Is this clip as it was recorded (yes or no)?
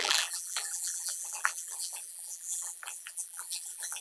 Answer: no